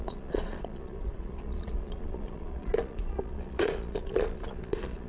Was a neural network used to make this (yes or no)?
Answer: yes